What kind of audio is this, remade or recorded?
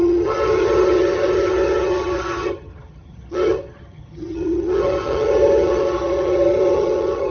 remade